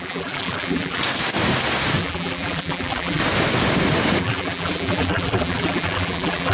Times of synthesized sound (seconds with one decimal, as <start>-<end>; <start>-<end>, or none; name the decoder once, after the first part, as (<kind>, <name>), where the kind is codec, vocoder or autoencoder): 0.0-1.0 (vocoder, BigVGAN v2); 2.0-3.2; 4.2-6.5